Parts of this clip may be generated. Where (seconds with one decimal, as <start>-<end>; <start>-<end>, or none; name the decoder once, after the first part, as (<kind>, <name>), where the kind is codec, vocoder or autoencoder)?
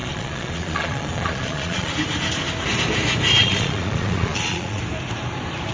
0.0-1.9 (vocoder, Vocos); 3.4-4.8